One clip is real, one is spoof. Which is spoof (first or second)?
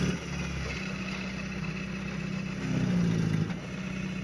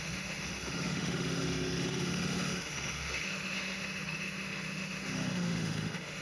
second